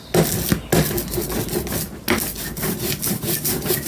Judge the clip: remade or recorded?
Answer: recorded